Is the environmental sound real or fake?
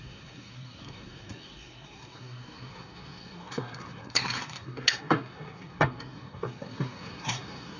fake